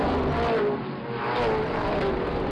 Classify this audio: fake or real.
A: real